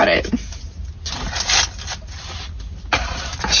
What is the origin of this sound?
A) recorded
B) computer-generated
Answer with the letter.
A